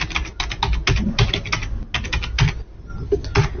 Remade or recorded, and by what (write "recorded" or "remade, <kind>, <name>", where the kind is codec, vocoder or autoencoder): recorded